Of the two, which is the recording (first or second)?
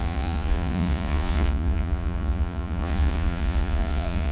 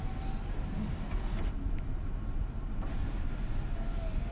second